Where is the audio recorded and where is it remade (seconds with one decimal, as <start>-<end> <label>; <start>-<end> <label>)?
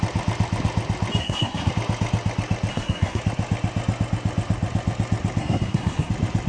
0.0-1.2 recorded; 1.2-1.7 remade; 1.7-2.7 recorded; 2.7-3.2 remade; 3.2-5.4 recorded; 5.4-6.1 remade; 6.1-6.5 recorded